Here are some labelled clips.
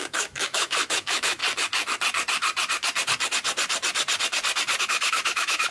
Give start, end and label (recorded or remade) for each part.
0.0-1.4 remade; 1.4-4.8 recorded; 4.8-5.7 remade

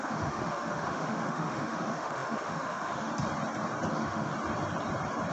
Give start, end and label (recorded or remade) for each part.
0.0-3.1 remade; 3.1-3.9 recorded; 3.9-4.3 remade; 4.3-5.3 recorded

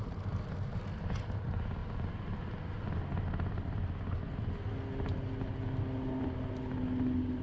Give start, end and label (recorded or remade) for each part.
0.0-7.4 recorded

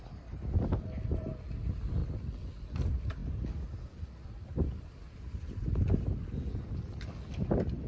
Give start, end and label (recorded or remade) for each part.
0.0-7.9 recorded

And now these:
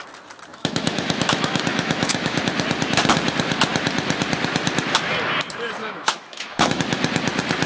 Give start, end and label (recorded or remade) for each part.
0.0-0.5 recorded; 0.5-2.4 remade; 2.4-5.8 recorded; 5.8-6.8 remade; 6.8-7.7 recorded